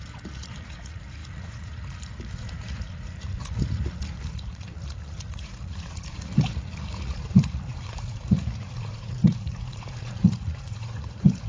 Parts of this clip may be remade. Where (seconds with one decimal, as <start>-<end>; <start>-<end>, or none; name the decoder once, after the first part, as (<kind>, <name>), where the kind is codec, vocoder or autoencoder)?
0.0-11.5 (vocoder, Vocos)